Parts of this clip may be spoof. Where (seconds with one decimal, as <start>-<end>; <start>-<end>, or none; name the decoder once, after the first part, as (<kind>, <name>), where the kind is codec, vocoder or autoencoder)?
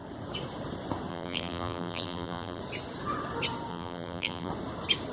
1.1-2.6 (vocoder, BigVGAN v2); 3.7-4.5